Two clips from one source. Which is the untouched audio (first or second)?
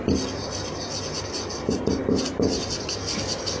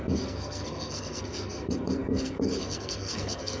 first